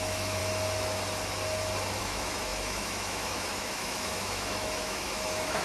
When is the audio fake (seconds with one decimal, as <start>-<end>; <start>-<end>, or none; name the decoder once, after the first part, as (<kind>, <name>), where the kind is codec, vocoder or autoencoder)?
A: 0.0-0.4 (autoencoder, DAC-VAE); 2.0-5.6